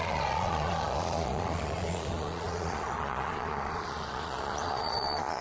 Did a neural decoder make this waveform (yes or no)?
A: yes